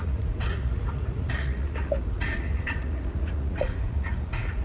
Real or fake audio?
fake